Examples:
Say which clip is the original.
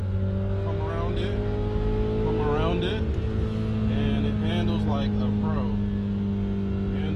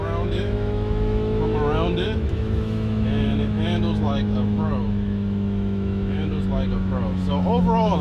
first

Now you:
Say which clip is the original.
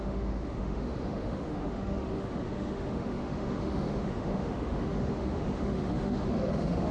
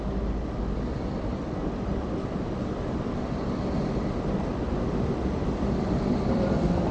second